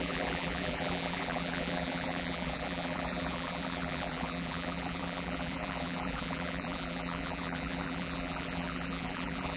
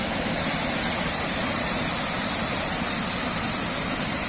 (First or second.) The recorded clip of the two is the second